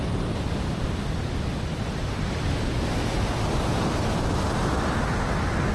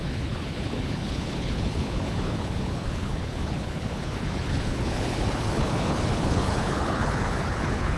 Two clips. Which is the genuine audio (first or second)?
first